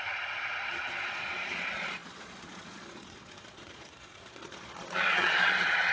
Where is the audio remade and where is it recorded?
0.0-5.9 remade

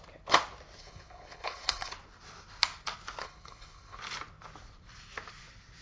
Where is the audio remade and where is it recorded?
0.0-0.8 recorded; 0.8-1.9 remade; 1.9-3.2 recorded; 3.2-4.0 remade; 4.0-5.8 recorded

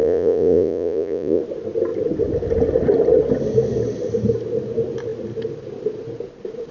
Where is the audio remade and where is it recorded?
0.0-1.4 remade; 1.4-6.7 recorded

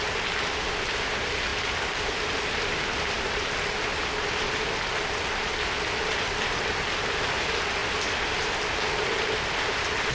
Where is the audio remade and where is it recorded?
0.0-10.1 recorded

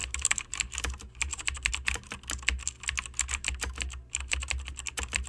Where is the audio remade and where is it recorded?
0.0-1.7 remade; 1.7-3.3 recorded; 3.3-5.3 remade

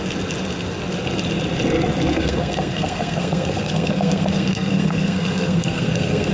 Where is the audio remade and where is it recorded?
0.0-2.1 recorded; 2.1-6.3 remade